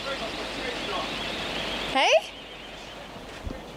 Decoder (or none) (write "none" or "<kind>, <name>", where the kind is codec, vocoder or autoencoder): none